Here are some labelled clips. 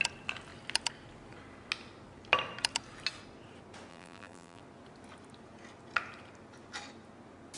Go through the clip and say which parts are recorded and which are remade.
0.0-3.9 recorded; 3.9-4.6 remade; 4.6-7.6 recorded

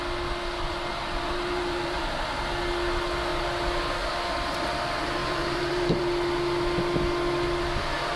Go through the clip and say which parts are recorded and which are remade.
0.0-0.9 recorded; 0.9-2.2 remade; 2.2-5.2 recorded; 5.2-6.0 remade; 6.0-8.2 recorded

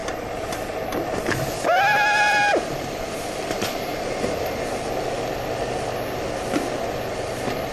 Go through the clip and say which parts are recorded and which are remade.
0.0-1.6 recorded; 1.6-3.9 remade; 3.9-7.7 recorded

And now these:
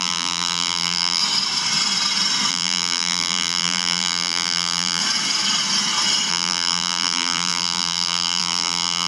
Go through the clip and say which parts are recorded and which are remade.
0.0-1.2 remade; 1.2-2.5 recorded; 2.5-5.0 remade; 5.0-6.3 recorded; 6.3-9.1 remade